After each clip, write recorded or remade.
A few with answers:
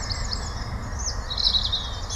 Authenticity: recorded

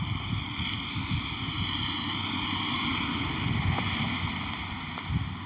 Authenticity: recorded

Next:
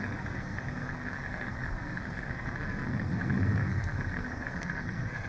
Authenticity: remade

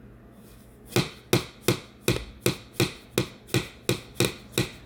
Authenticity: recorded